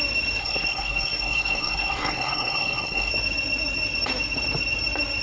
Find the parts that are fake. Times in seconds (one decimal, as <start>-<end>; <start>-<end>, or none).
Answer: 0.4-3.1